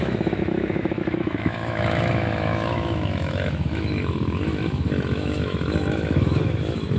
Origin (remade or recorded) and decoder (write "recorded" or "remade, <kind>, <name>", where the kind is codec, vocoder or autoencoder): remade, autoencoder, DAC-VAE